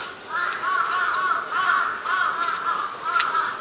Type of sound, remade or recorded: recorded